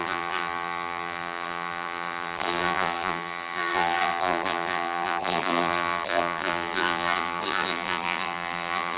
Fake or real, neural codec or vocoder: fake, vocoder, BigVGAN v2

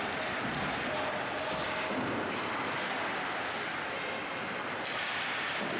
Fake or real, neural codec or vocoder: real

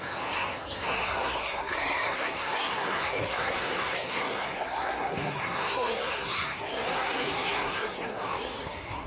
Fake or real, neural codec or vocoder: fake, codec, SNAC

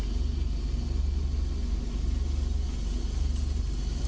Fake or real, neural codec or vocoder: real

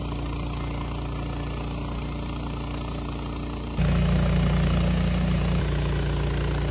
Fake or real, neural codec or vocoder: real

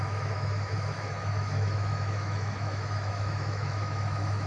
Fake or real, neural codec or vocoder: fake, autoencoder, DAC-VAE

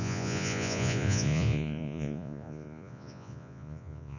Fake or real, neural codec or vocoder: fake, vocoder, Vocos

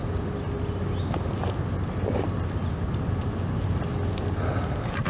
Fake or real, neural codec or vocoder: real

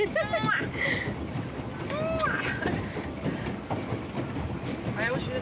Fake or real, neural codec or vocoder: real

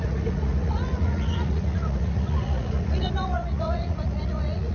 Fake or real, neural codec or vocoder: fake, vocoder, Vocos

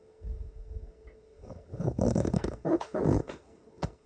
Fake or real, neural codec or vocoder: fake, codec, SNAC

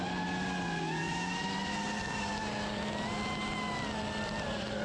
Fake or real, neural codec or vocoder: real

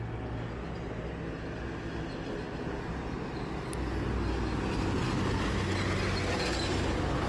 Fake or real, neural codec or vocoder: real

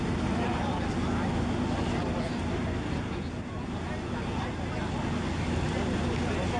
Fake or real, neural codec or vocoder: real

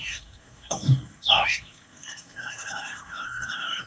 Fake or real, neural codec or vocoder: fake, codec, SNAC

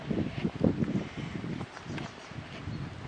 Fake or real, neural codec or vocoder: real